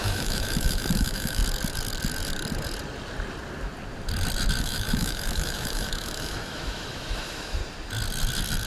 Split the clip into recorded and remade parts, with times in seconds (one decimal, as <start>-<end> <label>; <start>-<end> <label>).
0.0-1.4 remade; 1.4-4.6 recorded; 4.6-7.6 remade; 7.6-8.7 recorded